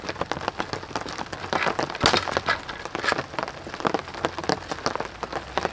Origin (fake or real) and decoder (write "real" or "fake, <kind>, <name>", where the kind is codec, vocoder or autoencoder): real